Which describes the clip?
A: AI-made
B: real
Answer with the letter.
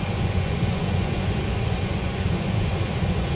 A